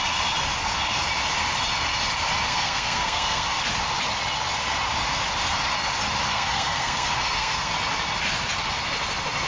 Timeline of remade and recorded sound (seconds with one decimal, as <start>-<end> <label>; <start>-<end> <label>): 0.0-2.5 recorded; 2.5-3.6 remade; 3.6-6.3 recorded; 6.3-7.7 remade; 7.7-9.5 recorded

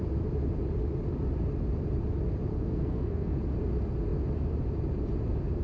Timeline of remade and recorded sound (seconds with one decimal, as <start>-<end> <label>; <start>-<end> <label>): 0.0-2.5 recorded; 2.5-3.4 remade; 3.4-5.6 recorded

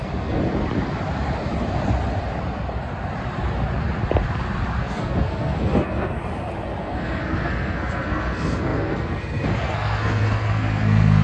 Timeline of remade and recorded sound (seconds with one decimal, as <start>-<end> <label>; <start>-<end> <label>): 0.0-0.4 remade; 0.4-4.8 recorded; 4.8-6.2 remade; 6.2-6.8 recorded; 6.8-11.2 remade

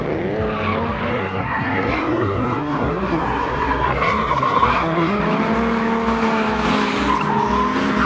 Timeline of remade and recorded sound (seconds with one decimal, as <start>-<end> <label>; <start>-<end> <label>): 0.0-1.1 recorded; 1.1-5.2 remade; 5.2-8.1 recorded

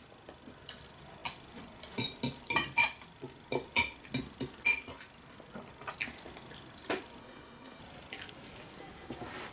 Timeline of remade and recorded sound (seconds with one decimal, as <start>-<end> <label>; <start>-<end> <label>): 0.0-7.2 recorded; 7.2-7.8 remade; 7.8-9.5 recorded

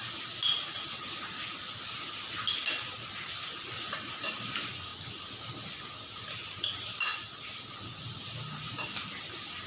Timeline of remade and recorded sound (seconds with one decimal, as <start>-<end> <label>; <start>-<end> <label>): 0.0-9.7 recorded

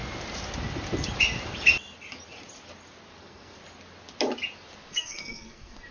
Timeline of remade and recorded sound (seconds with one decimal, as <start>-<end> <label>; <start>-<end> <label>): 0.0-3.2 recorded; 3.2-3.6 remade; 3.6-4.9 recorded; 4.9-5.9 remade

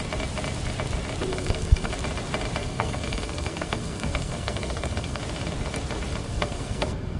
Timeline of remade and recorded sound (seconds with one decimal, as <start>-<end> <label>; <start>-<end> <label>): 0.0-1.3 recorded; 1.3-1.9 remade; 1.9-2.6 recorded; 2.6-5.2 remade; 5.2-6.2 recorded; 6.2-7.2 remade